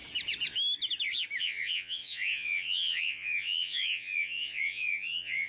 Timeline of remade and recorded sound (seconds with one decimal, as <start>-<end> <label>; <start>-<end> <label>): 0.0-1.4 recorded; 1.4-5.5 remade